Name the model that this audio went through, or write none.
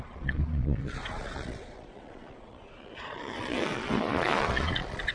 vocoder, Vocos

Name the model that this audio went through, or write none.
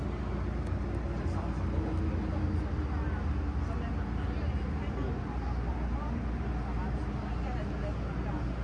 none